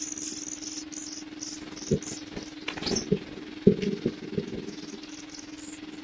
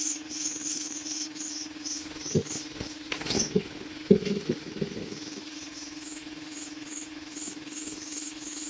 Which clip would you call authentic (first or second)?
first